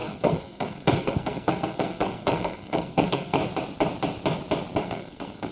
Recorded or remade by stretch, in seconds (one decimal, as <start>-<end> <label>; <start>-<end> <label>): 0.0-3.4 remade; 3.4-4.8 recorded; 4.8-5.5 remade